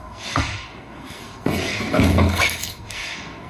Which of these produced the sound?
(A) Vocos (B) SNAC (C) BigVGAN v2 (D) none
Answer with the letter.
B